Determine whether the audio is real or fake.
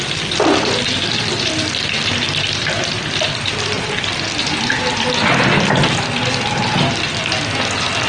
real